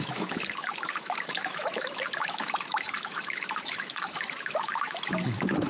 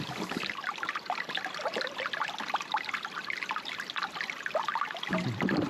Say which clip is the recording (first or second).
second